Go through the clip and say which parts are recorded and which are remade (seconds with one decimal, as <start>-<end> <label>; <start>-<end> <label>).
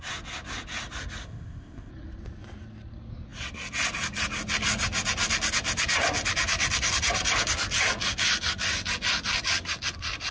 0.0-1.2 recorded; 1.2-1.9 remade; 1.9-10.3 recorded